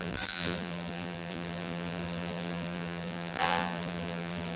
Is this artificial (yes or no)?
yes